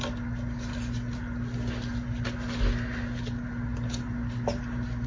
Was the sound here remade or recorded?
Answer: recorded